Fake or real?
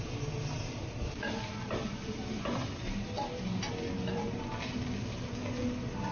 real